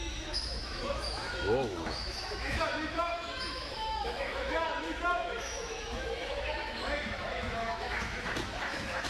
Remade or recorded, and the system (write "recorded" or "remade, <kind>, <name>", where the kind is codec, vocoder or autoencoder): remade, autoencoder, DAC-VAE